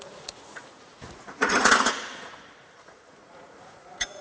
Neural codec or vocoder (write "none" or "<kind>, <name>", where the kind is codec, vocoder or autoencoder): vocoder, Vocos